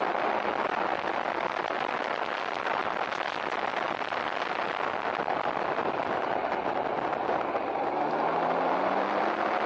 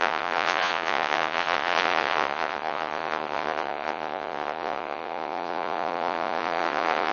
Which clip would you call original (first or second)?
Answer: first